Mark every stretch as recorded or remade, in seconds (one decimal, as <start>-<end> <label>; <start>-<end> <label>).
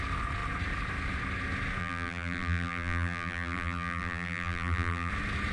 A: 0.0-1.8 recorded; 1.8-5.1 remade; 5.1-5.5 recorded